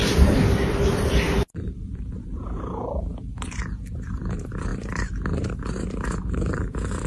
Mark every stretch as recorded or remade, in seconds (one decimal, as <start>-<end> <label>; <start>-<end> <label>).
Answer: 0.0-0.8 recorded; 0.8-3.1 remade; 3.1-4.1 recorded; 4.1-7.1 remade